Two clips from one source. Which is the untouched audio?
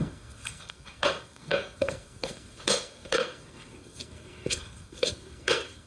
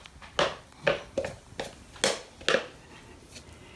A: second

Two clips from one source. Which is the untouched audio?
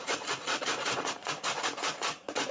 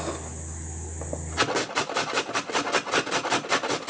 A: second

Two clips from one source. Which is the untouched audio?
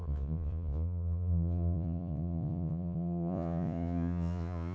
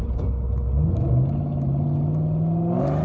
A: second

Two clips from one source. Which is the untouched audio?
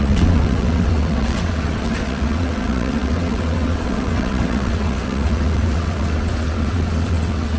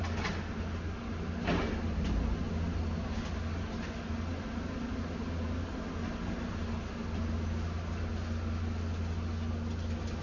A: second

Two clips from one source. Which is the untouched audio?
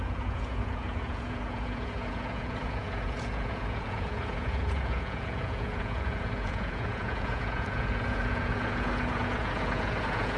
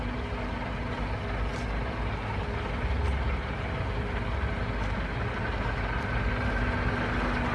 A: second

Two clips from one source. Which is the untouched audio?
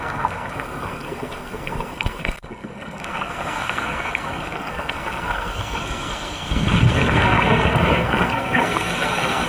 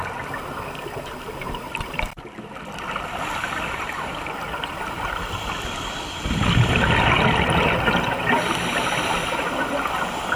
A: second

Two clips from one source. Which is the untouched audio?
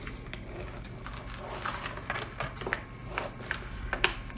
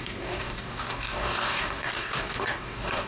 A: first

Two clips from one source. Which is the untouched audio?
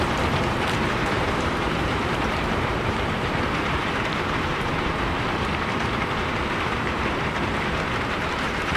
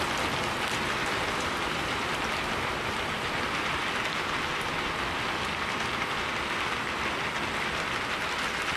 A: second